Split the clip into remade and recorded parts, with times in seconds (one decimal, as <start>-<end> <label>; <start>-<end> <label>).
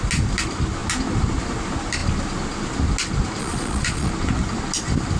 0.0-3.4 recorded; 3.4-4.1 remade; 4.1-5.2 recorded